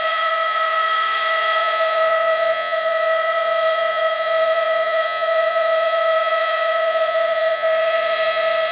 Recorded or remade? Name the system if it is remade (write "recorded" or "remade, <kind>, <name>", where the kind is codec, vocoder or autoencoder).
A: remade, vocoder, Vocos